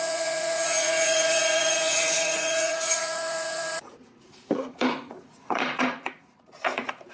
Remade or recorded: remade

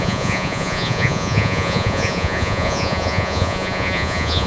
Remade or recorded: remade